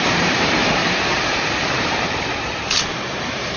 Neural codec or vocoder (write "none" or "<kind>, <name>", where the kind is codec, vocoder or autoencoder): vocoder, BigVGAN v2